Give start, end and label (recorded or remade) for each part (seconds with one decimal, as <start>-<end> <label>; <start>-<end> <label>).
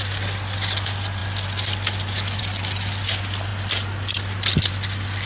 0.0-5.3 recorded